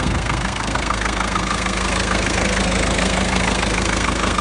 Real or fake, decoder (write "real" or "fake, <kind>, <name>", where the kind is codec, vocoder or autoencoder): fake, codec, SNAC